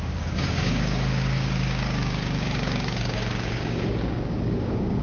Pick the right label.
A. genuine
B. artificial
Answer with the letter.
B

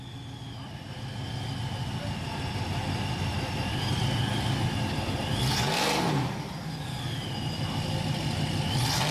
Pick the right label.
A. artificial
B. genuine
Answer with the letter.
B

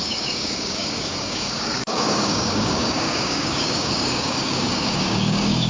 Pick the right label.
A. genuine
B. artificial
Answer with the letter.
B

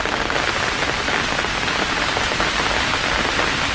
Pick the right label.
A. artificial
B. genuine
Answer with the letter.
B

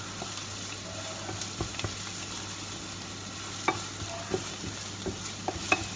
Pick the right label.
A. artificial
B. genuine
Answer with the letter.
B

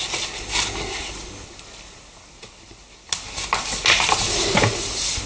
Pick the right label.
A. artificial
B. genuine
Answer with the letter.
B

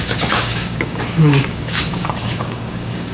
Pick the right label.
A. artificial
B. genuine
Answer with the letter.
A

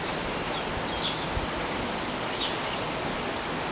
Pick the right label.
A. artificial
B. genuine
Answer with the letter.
B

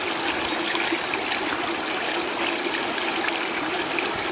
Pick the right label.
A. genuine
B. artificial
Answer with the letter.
A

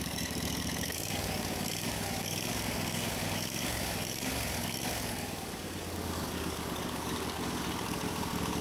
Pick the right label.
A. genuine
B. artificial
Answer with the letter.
B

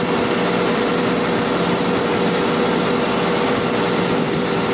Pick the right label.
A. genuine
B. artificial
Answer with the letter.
A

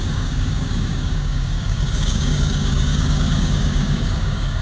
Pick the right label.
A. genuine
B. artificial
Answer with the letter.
B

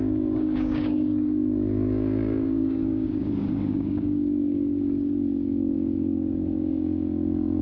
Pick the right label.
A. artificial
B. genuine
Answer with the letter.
A